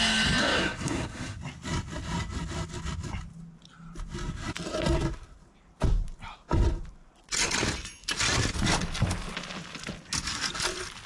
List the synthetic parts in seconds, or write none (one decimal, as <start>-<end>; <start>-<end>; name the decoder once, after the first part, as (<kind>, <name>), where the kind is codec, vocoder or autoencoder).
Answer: 0.4-1.4 (codec, SNAC)